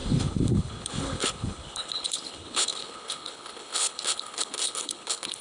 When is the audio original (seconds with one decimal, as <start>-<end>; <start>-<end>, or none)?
none